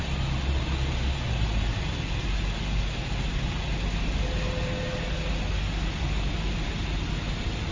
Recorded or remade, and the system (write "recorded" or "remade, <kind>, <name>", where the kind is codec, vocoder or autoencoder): recorded